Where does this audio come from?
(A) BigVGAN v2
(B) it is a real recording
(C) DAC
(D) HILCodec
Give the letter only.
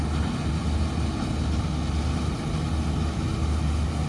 B